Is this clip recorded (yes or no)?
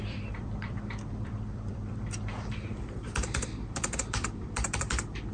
no